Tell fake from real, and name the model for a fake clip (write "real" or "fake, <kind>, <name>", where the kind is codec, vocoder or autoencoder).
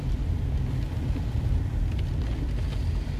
real